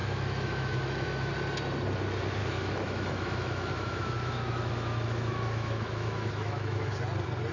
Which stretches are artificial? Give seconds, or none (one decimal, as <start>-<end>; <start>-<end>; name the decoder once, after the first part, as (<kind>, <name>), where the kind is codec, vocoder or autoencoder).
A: 0.0-1.3 (autoencoder, DAC-VAE); 2.4-6.9